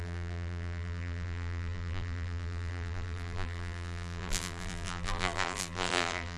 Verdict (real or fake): fake